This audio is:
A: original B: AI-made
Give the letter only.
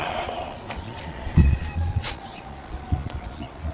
B